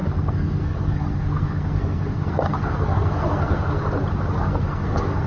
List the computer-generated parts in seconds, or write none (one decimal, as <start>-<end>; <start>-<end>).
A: 0.0-3.8; 4.4-5.3